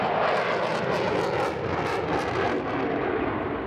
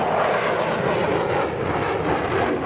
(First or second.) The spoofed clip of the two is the second